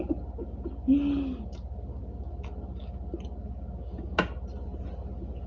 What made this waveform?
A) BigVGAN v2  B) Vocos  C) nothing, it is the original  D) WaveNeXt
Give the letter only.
C